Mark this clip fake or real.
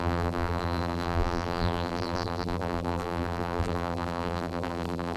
fake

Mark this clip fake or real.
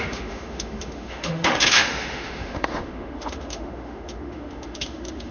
fake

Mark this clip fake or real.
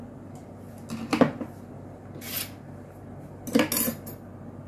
real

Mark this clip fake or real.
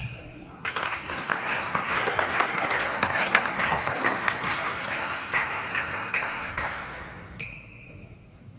fake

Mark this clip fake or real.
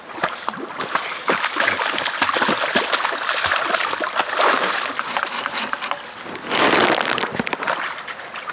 real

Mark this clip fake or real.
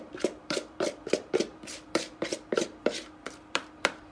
fake